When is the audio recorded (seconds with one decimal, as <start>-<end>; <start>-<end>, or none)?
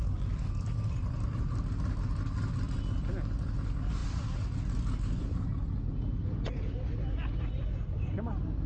0.0-8.7